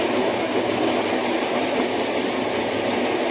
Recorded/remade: recorded